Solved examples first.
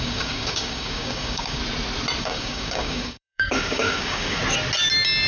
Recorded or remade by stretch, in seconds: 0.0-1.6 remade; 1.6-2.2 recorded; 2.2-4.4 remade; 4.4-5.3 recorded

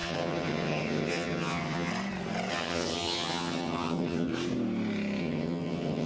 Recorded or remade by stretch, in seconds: 0.0-1.9 remade; 1.9-2.5 recorded; 2.5-4.3 remade; 4.3-5.2 recorded; 5.2-6.1 remade

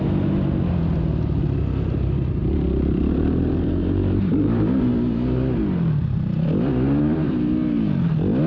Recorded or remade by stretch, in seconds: 0.0-2.4 recorded; 2.4-4.9 remade; 4.9-8.5 recorded

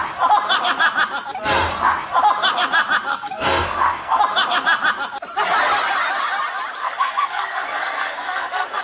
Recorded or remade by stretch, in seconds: 0.0-3.1 recorded; 3.1-4.2 remade; 4.2-6.8 recorded; 6.8-8.8 remade